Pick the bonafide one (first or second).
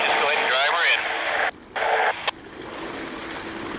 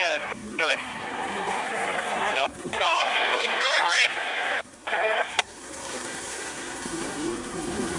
first